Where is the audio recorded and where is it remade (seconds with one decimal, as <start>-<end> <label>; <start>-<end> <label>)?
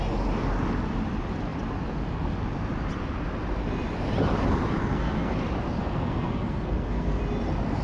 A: 0.0-4.8 recorded; 4.8-5.3 remade; 5.3-5.8 recorded; 5.8-7.2 remade; 7.2-7.8 recorded